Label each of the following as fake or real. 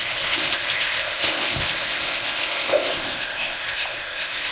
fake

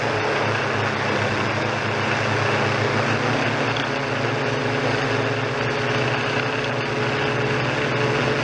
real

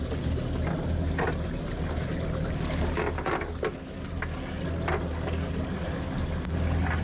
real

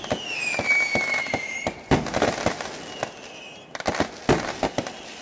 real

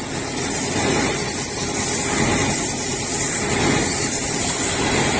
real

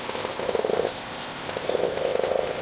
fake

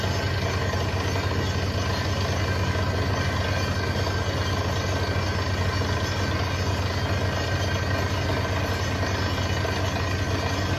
real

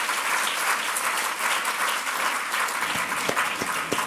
real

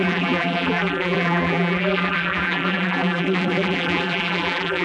fake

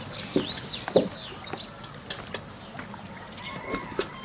real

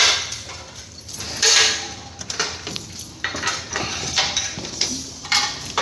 fake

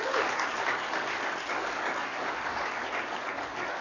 fake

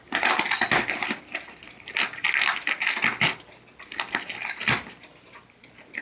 real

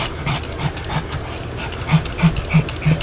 real